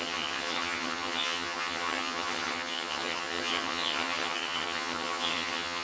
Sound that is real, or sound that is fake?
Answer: fake